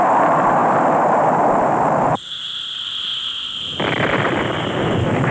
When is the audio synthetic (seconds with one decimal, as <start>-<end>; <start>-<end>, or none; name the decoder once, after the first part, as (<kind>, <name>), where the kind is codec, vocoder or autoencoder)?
0.0-3.1 (vocoder, BigVGAN v2); 3.6-5.3

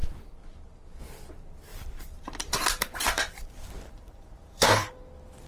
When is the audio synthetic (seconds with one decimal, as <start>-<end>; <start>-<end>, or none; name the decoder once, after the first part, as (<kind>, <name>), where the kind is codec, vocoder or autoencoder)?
1.7-5.0 (vocoder, BigVGAN v2)

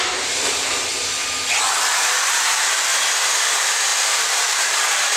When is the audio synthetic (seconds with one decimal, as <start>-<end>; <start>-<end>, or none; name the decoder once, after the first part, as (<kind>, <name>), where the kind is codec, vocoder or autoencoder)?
0.0-0.9 (vocoder, BigVGAN v2); 1.8-5.2

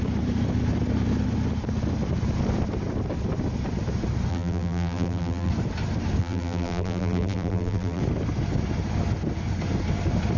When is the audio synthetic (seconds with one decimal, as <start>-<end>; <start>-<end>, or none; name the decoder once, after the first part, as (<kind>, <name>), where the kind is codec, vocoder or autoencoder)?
4.3-5.5 (vocoder, BigVGAN v2); 6.2-8.0